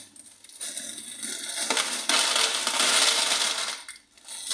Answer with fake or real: real